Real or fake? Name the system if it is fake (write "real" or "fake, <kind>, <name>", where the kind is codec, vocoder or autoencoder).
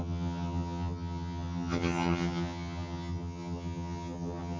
fake, vocoder, HiFi-GAN